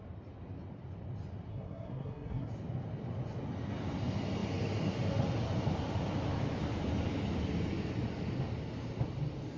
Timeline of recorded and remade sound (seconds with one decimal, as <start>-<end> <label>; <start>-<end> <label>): 0.0-1.5 recorded; 1.5-2.5 remade; 2.5-9.6 recorded